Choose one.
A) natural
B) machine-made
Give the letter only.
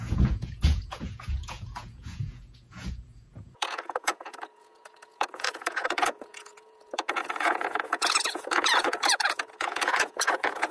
B